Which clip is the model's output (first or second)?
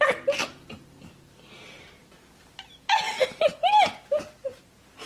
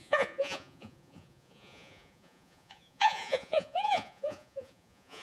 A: second